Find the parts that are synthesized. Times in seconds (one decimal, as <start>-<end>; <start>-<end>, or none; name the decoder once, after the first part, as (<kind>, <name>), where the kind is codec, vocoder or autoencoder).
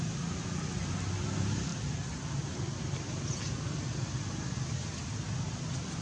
none